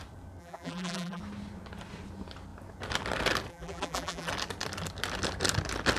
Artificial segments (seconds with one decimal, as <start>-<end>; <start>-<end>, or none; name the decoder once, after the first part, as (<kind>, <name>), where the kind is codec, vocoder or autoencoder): 0.4-1.2 (vocoder, BigVGAN v2); 3.5-4.3